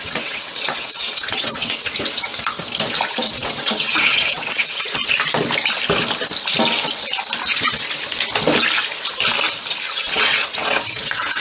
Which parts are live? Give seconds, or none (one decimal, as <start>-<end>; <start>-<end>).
2.3-3.2; 5.0-9.9